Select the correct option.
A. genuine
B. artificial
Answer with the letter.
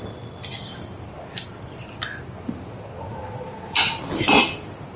A